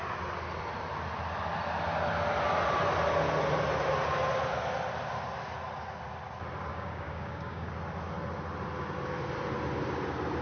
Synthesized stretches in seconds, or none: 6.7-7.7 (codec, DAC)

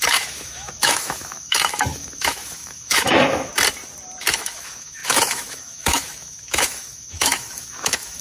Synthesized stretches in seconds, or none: 0.0-3.5 (autoencoder, DAC-VAE); 4.2-8.2